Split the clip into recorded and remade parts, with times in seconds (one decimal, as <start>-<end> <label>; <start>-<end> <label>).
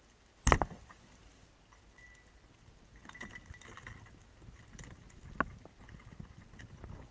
0.0-7.1 recorded